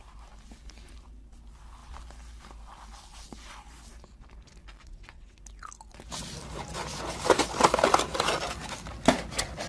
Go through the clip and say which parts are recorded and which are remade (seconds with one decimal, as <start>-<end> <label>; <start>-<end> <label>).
0.0-4.8 recorded; 4.8-5.4 remade; 5.4-9.7 recorded